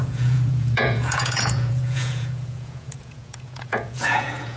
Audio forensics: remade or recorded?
remade